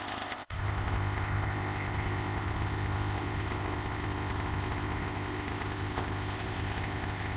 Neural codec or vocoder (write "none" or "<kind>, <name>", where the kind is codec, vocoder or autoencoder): codec, ZipCodec